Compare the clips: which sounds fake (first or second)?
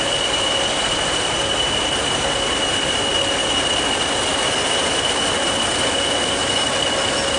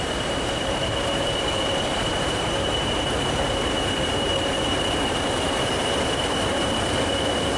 second